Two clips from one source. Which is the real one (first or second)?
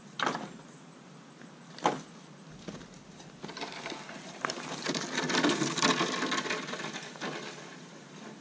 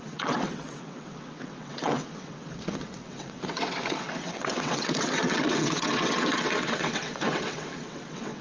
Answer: first